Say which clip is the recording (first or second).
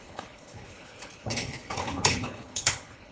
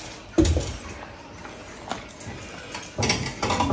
second